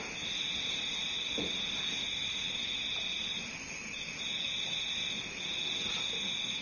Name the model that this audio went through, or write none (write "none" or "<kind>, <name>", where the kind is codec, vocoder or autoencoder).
none